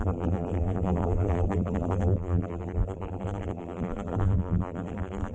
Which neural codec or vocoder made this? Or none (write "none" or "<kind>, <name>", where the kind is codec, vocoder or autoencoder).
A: vocoder, BigVGAN v2